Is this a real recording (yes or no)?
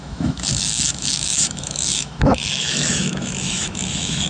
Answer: no